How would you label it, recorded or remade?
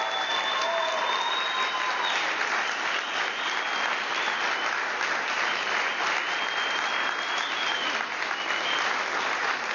recorded